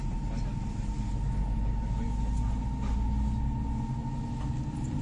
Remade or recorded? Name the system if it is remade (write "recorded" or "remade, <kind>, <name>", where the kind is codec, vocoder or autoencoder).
recorded